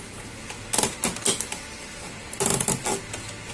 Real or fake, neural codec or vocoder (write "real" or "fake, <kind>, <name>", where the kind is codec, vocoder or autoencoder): real